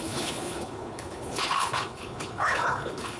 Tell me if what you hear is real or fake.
fake